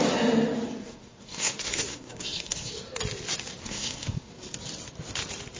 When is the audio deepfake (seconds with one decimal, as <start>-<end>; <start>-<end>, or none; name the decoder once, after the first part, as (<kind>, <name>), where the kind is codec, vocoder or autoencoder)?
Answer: 0.8-2.7 (codec, SNAC); 3.6-4.3